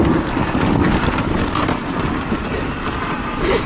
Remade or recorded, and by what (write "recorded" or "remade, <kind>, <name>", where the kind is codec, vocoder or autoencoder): remade, vocoder, BigVGAN v2